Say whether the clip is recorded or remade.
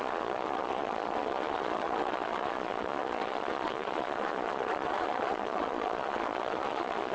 remade